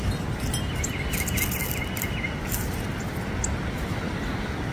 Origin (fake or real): real